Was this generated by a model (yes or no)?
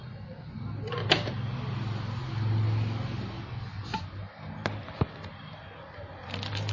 no